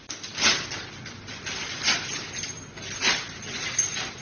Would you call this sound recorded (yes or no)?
yes